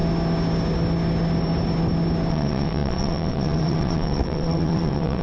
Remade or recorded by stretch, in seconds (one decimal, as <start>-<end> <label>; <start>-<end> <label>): 0.0-2.3 recorded; 2.3-5.2 remade

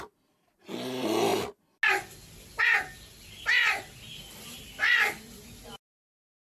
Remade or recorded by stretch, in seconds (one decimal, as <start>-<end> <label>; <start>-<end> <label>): 0.0-6.5 recorded

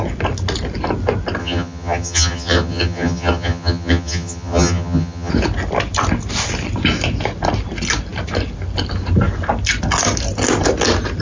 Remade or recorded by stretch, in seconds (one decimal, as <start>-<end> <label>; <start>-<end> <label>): 0.0-1.4 recorded; 1.4-5.3 remade; 5.3-11.2 recorded